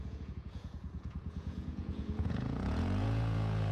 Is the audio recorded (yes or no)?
no